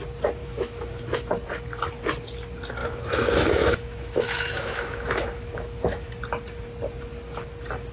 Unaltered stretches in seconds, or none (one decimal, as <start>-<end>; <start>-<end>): 0.0-0.4; 1.3-2.8; 6.1-7.9